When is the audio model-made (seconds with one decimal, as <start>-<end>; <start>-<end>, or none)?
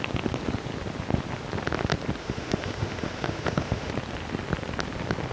2.2-3.9